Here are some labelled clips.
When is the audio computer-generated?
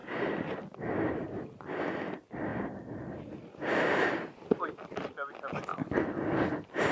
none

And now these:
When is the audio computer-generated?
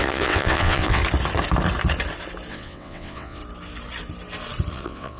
0.0-1.0 (vocoder, WaveNeXt); 2.5-3.4; 4.7-5.2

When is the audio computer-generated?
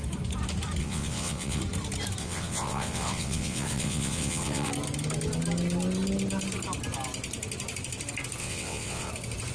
0.8-1.6 (vocoder, WaveNeXt); 2.2-4.7; 8.4-9.1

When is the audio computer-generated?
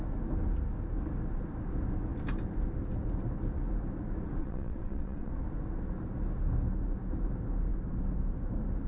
4.4-5.3 (vocoder, WaveNeXt)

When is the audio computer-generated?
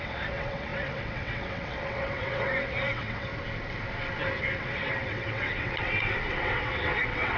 0.0-3.3 (vocoder, WaveNeXt); 4.4-7.4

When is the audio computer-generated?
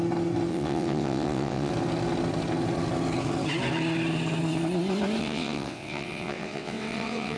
0.5-1.7 (vocoder, WaveNeXt); 5.2-7.4